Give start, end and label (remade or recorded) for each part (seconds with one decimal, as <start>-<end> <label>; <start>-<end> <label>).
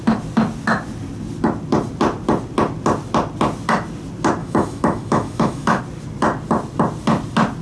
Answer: 0.0-4.4 recorded; 4.4-5.8 remade; 5.8-7.6 recorded